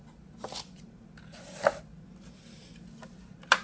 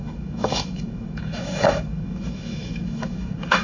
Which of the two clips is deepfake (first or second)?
second